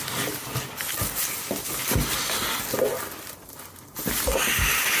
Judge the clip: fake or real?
real